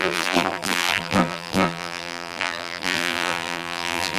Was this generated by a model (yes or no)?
yes